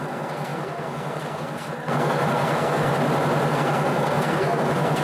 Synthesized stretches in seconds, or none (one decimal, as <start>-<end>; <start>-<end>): 0.0-2.9; 3.5-5.0